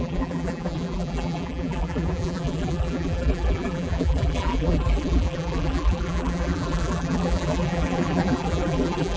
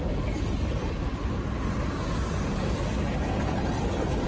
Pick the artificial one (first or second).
first